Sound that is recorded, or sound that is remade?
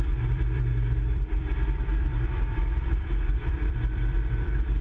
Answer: remade